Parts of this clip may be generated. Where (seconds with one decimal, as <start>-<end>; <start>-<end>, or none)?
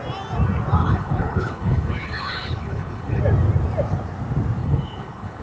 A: 0.8-3.2; 4.6-5.4